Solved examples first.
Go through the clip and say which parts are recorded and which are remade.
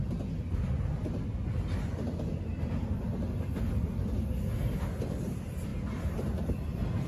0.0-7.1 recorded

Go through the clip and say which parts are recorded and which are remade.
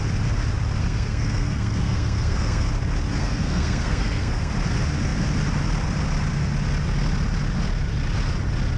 0.0-0.8 recorded; 0.8-2.7 remade; 2.7-3.2 recorded; 3.2-4.5 remade; 4.5-8.8 recorded